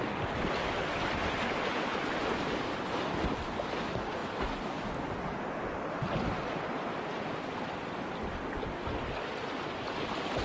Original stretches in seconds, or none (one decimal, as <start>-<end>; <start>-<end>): 0.0-10.4